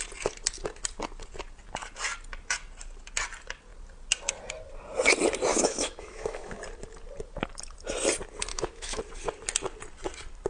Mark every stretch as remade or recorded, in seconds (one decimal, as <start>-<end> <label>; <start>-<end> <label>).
0.0-5.5 recorded; 5.5-6.6 remade; 6.6-8.5 recorded; 8.5-9.0 remade; 9.0-10.5 recorded